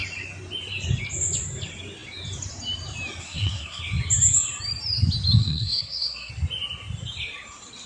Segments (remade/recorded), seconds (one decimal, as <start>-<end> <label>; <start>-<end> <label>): 0.0-3.2 recorded; 3.2-3.8 remade; 3.8-5.4 recorded; 5.4-6.3 remade; 6.3-7.9 recorded